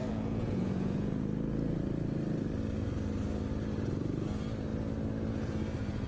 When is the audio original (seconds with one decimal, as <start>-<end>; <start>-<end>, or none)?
1.2-6.1